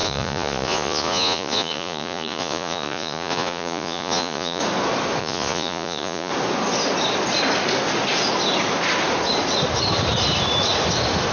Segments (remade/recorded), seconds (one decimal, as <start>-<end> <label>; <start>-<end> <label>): 0.0-4.6 remade; 4.6-5.2 recorded; 5.2-6.3 remade; 6.3-11.3 recorded